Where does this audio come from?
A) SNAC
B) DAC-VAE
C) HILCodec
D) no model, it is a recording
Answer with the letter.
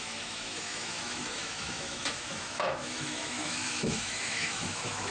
B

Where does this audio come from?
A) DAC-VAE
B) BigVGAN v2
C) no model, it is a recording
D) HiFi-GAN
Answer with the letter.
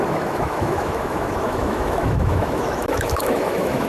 A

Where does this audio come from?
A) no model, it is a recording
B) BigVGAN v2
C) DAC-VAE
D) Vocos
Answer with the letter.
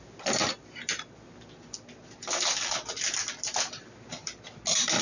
A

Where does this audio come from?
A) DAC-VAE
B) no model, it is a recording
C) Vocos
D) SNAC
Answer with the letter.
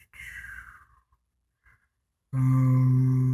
B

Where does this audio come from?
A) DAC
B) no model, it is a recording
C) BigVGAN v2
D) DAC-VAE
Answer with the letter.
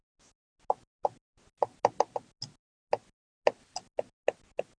B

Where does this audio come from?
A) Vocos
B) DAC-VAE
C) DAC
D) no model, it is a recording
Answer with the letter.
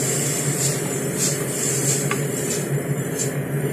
D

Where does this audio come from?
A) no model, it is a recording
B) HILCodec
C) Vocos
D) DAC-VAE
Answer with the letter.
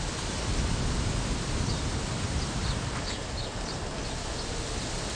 A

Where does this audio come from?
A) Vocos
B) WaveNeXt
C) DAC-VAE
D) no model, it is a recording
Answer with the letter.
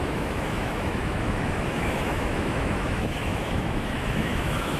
C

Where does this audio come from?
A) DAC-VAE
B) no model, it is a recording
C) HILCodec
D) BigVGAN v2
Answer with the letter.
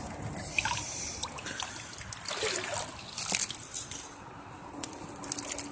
B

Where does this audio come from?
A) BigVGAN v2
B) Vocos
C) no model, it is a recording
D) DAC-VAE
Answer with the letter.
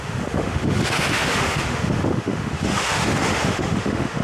D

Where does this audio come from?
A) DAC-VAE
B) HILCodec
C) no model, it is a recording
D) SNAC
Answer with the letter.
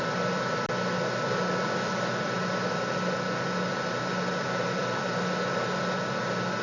C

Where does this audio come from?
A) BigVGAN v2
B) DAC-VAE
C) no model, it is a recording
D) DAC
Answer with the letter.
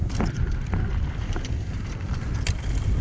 C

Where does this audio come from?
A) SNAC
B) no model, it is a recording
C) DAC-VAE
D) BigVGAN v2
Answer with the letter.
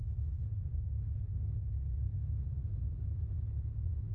B